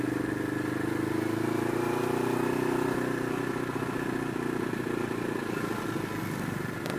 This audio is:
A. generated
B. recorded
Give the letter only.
B